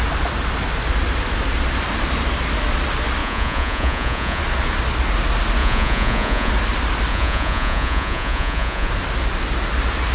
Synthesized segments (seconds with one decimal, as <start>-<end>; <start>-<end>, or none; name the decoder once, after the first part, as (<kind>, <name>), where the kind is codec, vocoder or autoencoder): 3.2-4.4 (vocoder, Vocos); 5.6-6.5; 7.1-8.9